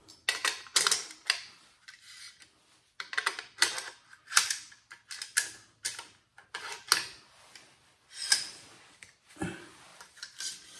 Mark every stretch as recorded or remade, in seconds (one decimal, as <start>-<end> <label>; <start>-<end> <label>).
0.0-6.3 recorded; 6.3-6.9 remade; 6.9-9.9 recorded; 9.9-10.8 remade